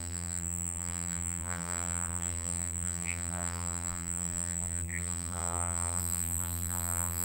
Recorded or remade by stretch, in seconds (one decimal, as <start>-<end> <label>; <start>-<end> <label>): 0.0-7.2 remade